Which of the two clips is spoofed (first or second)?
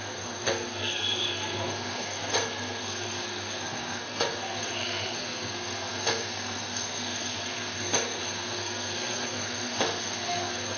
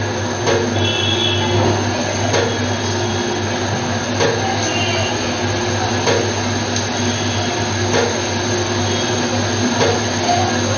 first